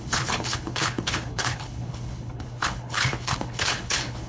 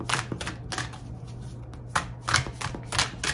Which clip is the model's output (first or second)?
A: first